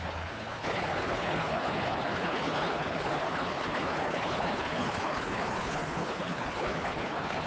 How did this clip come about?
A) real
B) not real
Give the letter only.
B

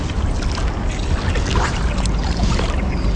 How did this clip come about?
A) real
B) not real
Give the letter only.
A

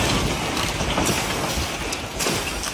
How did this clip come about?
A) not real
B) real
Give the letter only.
B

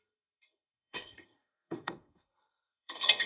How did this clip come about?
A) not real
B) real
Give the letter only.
A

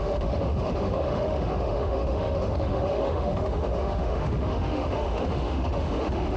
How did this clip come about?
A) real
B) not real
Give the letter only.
B